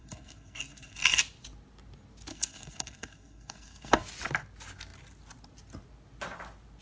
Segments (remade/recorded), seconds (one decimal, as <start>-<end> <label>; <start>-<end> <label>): 0.0-1.2 remade; 1.2-2.3 recorded; 2.3-4.0 remade; 4.0-6.8 recorded